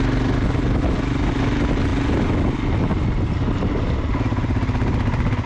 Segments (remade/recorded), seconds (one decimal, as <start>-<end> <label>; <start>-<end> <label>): 0.0-5.5 recorded